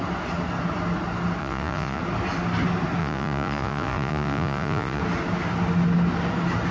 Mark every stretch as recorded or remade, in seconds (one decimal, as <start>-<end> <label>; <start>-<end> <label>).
0.0-1.4 recorded; 1.4-2.0 remade; 2.0-3.0 recorded; 3.0-5.0 remade; 5.0-6.7 recorded